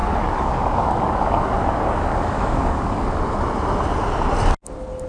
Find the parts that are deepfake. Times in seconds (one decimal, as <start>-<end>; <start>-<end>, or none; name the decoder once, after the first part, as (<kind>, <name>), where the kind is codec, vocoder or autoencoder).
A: 0.0-3.1 (codec, DAC)